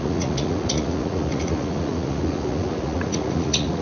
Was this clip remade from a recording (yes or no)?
yes